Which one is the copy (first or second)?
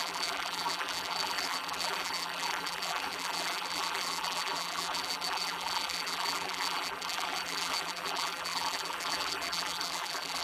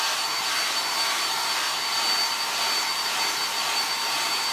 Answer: first